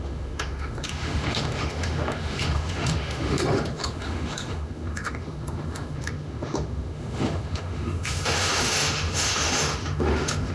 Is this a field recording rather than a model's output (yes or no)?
no